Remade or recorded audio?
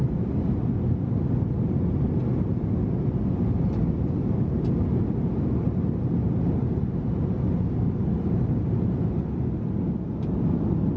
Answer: recorded